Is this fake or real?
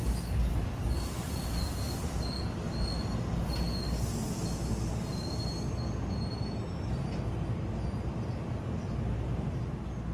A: real